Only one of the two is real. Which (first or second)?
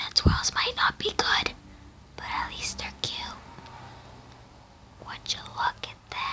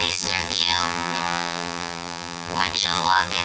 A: first